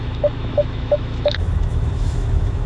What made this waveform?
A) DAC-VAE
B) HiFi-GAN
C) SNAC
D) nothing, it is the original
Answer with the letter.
A